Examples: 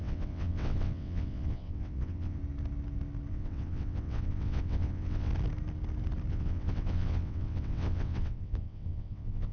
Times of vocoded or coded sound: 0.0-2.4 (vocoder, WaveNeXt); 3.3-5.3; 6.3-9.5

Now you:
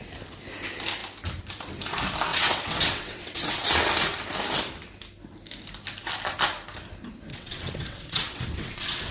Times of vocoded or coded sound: 2.3-3.7 (vocoder, WaveNeXt); 7.3-9.1

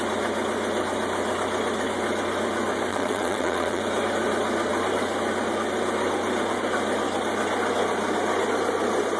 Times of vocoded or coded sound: 2.9-3.8 (vocoder, WaveNeXt)

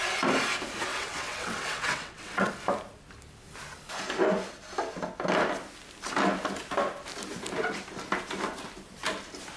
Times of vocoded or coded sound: 0.9-2.5 (vocoder, WaveNeXt)

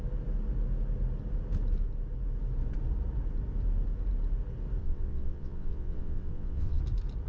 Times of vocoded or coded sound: 4.8-6.8 (vocoder, WaveNeXt)

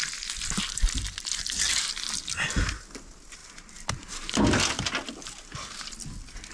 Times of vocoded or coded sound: none

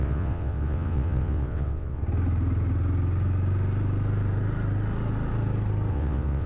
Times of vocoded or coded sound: 0.0-2.0 (vocoder, WaveNeXt); 5.9-6.5